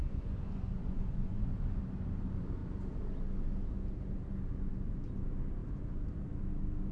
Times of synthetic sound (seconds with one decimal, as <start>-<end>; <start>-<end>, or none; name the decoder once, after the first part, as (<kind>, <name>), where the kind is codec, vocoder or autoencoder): 0.0-1.8 (vocoder, Vocos)